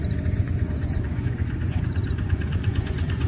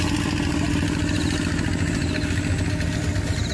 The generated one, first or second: first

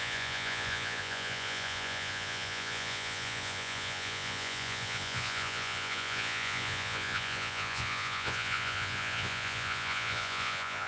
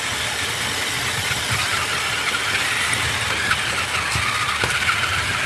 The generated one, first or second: first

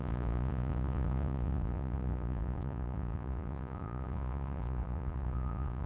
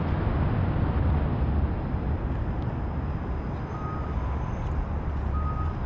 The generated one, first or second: first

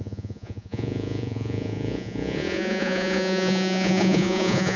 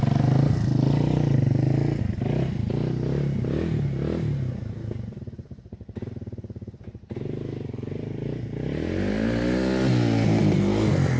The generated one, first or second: first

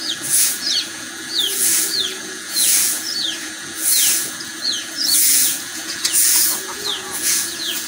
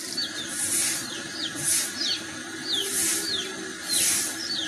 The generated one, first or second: first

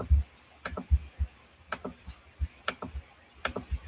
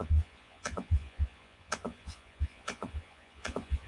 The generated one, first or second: second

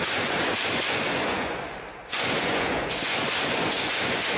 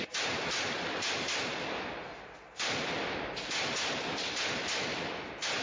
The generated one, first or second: first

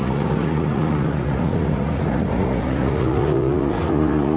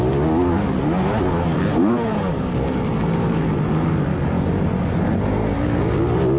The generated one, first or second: first